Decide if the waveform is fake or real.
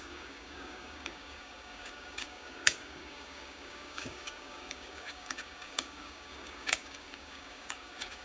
fake